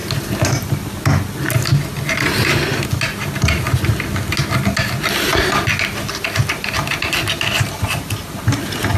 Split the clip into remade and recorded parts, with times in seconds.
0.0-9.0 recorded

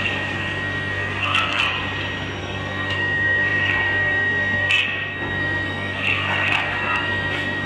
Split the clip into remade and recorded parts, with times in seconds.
0.0-1.6 remade; 1.6-2.4 recorded; 2.4-7.7 remade

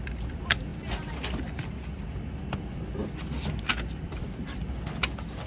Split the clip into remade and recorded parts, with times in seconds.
0.0-0.7 remade; 0.7-2.4 recorded; 2.4-3.0 remade; 3.0-3.7 recorded; 3.7-5.5 remade

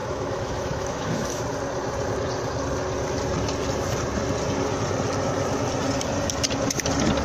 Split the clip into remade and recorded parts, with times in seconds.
0.0-1.4 remade; 1.4-7.2 recorded